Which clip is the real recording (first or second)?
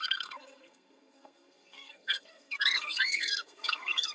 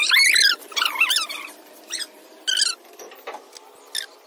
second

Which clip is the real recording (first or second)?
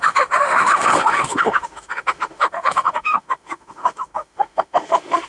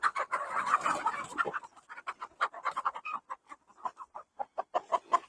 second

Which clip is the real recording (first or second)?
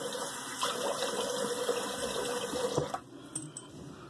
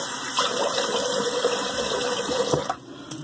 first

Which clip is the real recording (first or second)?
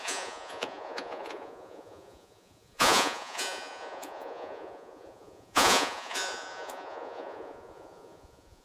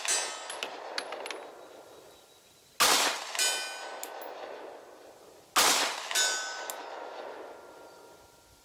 second